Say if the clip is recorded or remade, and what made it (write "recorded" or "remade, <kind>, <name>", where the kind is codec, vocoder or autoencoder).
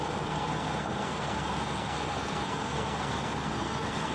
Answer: remade, codec, SNAC